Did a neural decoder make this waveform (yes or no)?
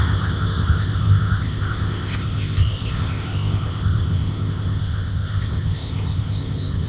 yes